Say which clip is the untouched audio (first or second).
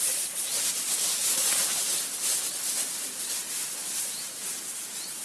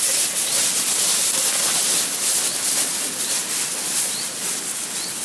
second